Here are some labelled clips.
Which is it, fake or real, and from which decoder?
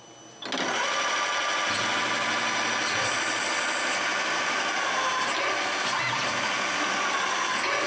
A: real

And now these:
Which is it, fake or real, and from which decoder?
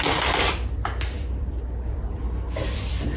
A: fake, vocoder, BigVGAN v2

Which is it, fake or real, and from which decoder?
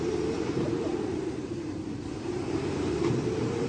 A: fake, vocoder, BigVGAN v2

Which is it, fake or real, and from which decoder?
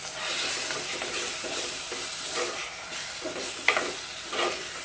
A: real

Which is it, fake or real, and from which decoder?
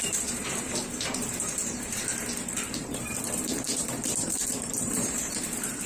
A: fake, vocoder, BigVGAN v2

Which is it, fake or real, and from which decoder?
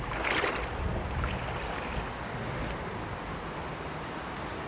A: fake, vocoder, BigVGAN v2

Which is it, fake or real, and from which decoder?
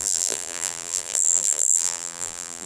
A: fake, vocoder, BigVGAN v2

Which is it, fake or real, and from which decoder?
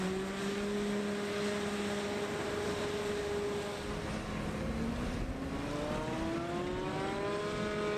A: real